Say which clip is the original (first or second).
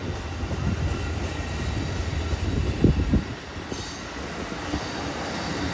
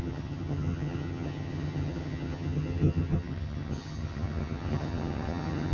first